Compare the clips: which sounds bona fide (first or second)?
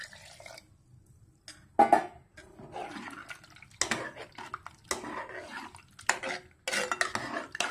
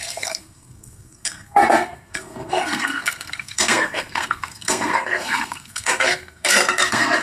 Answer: first